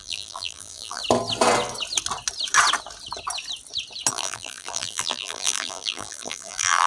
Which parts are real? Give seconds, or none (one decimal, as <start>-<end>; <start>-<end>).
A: 1.0-4.1